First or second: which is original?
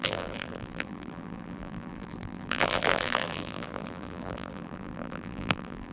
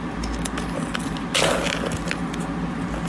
second